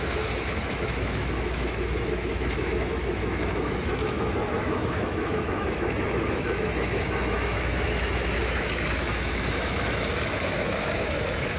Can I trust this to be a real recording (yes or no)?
no